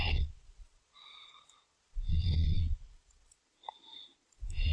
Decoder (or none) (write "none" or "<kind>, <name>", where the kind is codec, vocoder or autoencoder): vocoder, Vocos